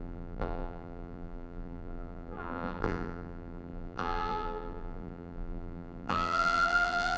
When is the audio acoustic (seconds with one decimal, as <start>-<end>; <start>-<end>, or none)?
none